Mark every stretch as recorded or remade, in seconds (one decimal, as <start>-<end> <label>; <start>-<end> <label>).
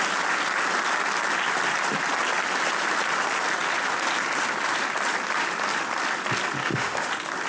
0.0-6.6 recorded; 6.6-7.1 remade; 7.1-7.5 recorded